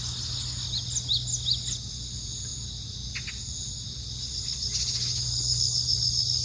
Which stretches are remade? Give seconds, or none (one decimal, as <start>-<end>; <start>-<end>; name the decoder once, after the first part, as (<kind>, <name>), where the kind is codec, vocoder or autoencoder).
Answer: none